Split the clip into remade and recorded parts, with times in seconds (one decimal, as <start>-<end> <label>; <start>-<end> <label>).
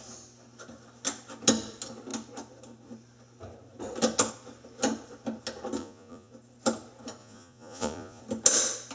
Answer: 0.0-5.8 recorded; 5.8-6.3 remade; 6.3-7.2 recorded; 7.2-8.2 remade; 8.2-8.9 recorded